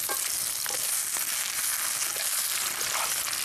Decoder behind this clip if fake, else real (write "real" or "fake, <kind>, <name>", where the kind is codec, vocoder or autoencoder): real